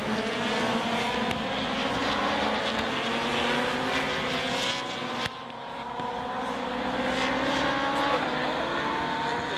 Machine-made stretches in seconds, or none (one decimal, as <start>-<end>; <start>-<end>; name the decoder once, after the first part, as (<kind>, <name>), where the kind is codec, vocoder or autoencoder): none